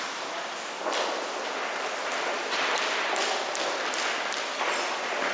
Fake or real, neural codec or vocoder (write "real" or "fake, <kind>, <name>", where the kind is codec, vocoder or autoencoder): real